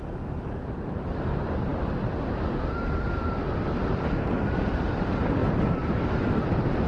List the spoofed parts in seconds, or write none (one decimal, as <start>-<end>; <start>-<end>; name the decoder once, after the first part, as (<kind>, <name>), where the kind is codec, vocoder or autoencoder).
none

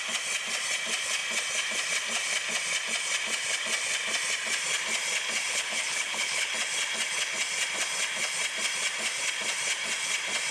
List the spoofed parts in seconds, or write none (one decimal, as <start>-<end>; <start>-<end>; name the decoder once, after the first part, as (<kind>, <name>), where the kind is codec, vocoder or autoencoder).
5.5-6.5 (codec, HILCodec)

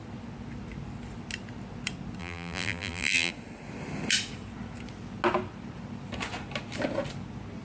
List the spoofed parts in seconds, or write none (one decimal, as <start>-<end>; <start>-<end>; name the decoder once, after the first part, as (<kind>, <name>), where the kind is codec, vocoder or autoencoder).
2.2-3.3 (vocoder, BigVGAN v2)

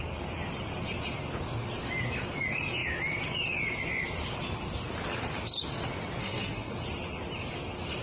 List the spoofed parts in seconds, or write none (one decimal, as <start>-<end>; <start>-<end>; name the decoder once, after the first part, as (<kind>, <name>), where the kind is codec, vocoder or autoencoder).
6.2-6.7 (codec, SNAC)

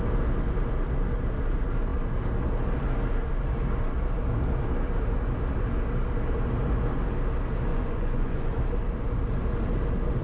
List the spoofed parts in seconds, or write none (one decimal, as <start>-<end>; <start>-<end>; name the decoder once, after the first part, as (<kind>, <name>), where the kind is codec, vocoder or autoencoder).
7.7-8.6 (vocoder, Vocos)

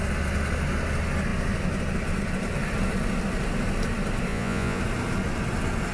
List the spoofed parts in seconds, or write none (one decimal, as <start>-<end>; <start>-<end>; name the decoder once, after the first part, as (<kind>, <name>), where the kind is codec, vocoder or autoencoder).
4.3-4.8 (vocoder, Vocos)